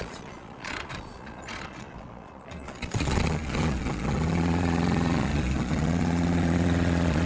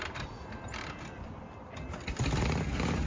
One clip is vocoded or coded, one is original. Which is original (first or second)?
second